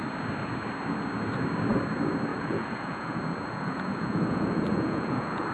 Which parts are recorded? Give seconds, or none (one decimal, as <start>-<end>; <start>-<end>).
0.0-2.3